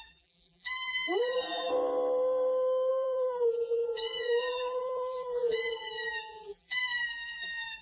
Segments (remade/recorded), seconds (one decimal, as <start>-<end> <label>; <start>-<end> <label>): 0.0-1.7 remade; 1.7-2.9 recorded; 2.9-7.8 remade